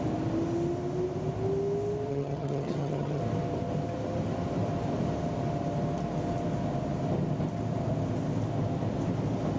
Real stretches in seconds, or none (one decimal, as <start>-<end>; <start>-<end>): 0.0-2.1; 3.2-9.6